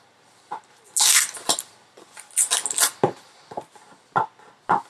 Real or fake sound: real